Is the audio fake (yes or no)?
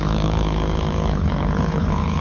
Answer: yes